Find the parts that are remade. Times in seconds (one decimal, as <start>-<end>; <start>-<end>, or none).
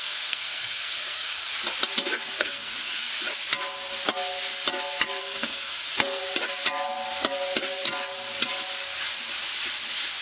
0.0-1.5; 2.4-3.1; 5.2-6.2